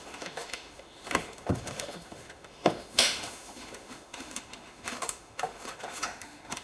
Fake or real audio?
fake